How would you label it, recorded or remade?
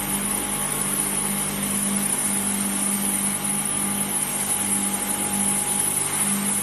recorded